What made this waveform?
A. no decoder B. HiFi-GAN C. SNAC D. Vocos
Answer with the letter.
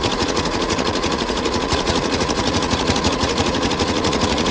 D